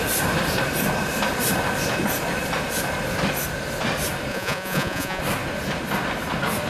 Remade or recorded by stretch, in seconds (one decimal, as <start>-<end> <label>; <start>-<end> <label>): 0.0-4.3 recorded; 4.3-5.2 remade; 5.2-6.7 recorded